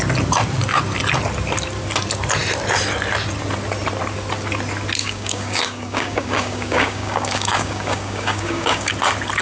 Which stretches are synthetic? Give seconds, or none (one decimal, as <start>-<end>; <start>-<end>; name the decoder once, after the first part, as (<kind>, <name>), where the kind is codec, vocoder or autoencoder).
5.0-8.9 (codec, DAC)